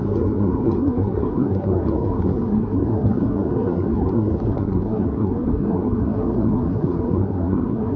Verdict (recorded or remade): remade